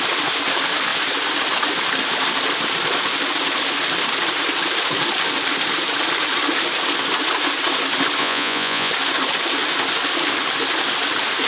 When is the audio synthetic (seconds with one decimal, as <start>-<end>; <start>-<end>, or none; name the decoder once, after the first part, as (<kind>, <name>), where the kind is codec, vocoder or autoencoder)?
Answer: 8.2-8.9 (vocoder, Vocos)